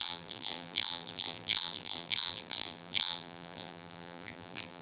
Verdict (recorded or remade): remade